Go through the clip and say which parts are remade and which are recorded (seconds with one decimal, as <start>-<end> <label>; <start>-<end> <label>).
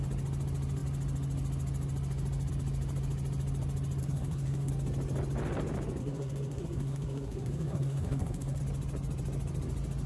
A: 0.0-4.0 recorded; 4.0-4.7 remade; 4.7-6.0 recorded; 6.0-8.6 remade; 8.6-10.1 recorded